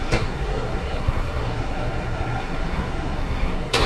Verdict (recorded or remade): remade